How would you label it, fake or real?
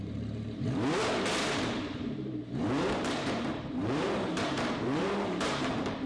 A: fake